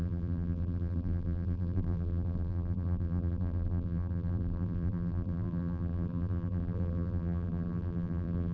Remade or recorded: remade